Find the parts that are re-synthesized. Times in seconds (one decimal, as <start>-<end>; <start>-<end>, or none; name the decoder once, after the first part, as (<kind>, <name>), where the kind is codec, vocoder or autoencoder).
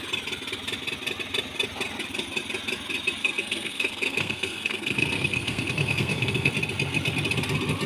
3.2-6.5 (codec, SNAC)